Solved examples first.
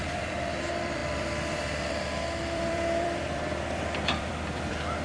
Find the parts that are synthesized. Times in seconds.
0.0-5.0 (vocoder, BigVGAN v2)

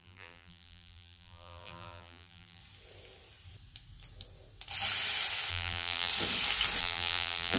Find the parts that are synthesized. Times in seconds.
0.0-2.6 (vocoder, BigVGAN v2); 5.5-6.1; 6.8-7.6

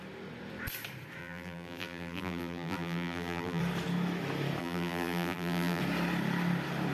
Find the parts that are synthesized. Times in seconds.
1.2-3.6 (vocoder, BigVGAN v2); 4.6-5.8

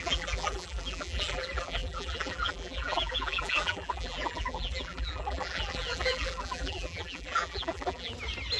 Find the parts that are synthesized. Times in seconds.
0.0-8.1 (vocoder, BigVGAN v2)

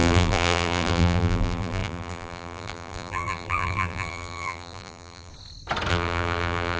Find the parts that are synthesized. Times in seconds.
0.0-5.3 (vocoder, BigVGAN v2); 5.9-6.8